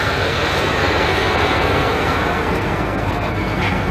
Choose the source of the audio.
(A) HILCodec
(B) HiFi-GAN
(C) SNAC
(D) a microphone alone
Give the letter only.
C